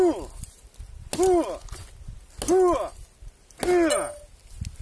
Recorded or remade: recorded